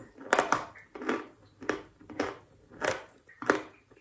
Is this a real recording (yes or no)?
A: yes